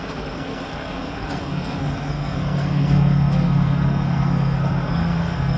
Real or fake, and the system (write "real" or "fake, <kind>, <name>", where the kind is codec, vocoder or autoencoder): fake, codec, SNAC